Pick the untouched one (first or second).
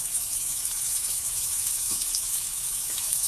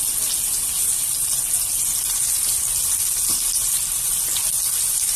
second